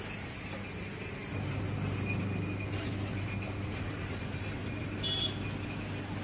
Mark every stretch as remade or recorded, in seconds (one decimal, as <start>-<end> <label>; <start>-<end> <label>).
0.0-6.2 recorded